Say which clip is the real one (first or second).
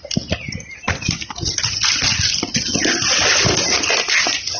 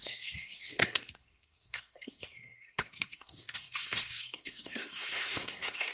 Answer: first